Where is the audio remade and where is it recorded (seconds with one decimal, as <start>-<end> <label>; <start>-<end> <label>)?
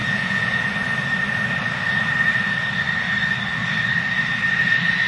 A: 0.0-0.7 remade; 0.7-5.1 recorded